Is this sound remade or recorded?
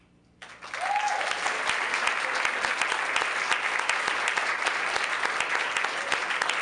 recorded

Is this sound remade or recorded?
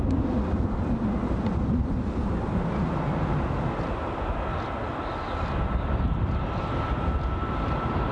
recorded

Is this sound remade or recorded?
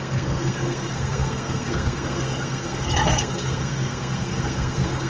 remade